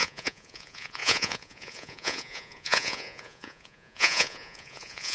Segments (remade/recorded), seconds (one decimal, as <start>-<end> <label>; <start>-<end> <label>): 0.0-5.1 remade

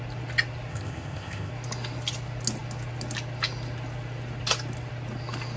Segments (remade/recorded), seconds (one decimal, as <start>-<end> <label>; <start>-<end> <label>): 0.0-0.7 recorded; 0.7-1.5 remade; 1.5-5.6 recorded

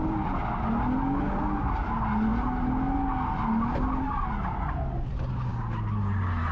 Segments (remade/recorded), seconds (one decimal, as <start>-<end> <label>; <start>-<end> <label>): 0.0-6.5 recorded

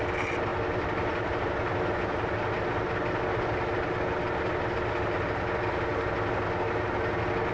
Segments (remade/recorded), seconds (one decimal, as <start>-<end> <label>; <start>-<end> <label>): 0.0-7.5 recorded

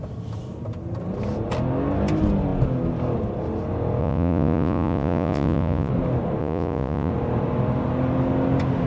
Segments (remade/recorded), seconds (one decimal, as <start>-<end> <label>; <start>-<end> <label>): 0.0-4.0 recorded; 4.0-5.9 remade; 5.9-6.4 recorded; 6.4-7.1 remade; 7.1-8.9 recorded

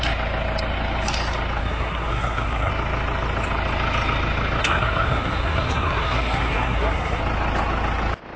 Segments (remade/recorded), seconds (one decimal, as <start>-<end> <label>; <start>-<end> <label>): 0.0-1.6 recorded; 1.6-2.7 remade; 2.7-4.6 recorded; 4.6-7.2 remade; 7.2-8.4 recorded